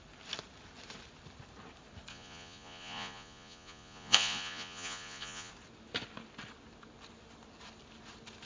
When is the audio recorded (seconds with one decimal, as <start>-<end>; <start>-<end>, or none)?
0.0-2.1; 5.5-8.5